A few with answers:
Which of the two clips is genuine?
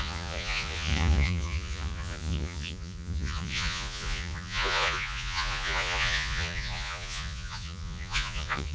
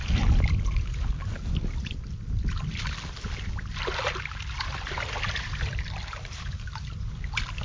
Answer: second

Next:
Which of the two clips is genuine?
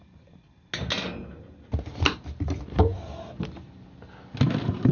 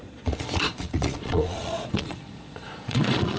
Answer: first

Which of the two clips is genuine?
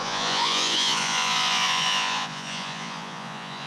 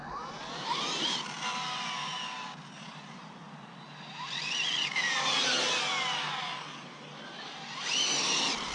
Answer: second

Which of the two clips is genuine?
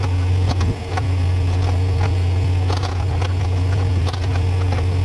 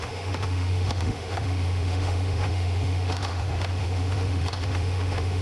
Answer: first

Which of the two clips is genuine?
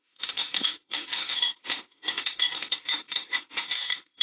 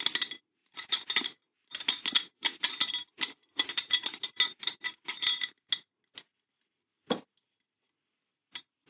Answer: second